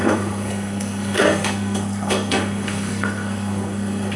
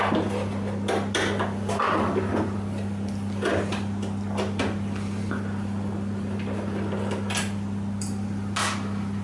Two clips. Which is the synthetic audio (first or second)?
first